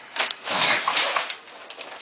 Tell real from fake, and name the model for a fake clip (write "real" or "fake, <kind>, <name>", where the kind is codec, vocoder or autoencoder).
real